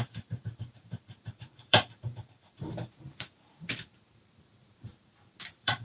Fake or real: fake